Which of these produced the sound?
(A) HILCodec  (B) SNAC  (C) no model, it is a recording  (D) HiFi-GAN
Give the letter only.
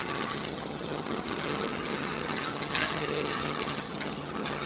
D